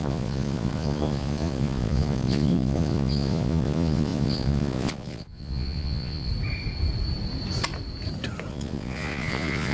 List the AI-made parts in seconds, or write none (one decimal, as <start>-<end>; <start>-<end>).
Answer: 0.0-6.3; 8.5-9.7